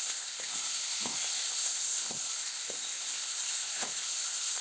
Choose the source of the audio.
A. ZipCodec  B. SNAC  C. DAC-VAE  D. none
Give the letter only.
A